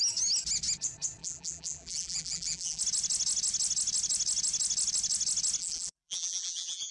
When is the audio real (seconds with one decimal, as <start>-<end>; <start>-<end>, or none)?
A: 0.0-1.2; 2.8-5.6